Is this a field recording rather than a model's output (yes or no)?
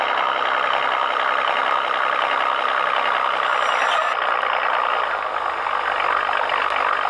yes